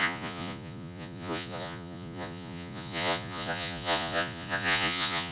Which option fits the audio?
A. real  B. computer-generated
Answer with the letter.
B